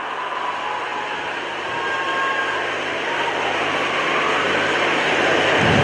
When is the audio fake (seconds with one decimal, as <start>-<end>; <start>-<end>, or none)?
none

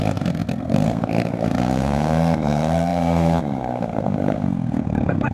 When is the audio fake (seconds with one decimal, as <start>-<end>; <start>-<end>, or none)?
0.0-5.3

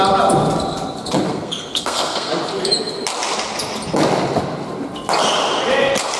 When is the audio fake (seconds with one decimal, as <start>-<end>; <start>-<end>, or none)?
1.3-2.3

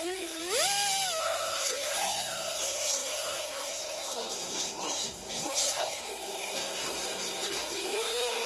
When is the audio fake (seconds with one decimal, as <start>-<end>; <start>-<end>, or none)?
0.0-0.4; 1.2-8.5